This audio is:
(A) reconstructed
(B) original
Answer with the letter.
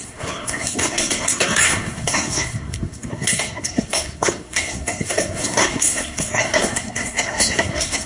A